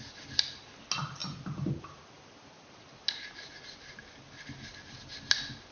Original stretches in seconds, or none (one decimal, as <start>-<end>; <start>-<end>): 0.0-5.7